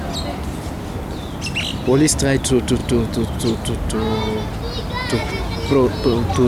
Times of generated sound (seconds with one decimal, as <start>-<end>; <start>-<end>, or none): none